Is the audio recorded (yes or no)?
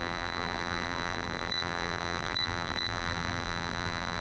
no